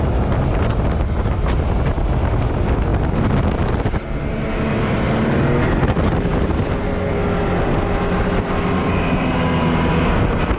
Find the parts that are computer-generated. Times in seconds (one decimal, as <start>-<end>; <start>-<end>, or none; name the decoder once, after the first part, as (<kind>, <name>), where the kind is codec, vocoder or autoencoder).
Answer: none